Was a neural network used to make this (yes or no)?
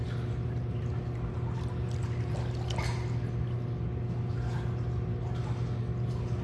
no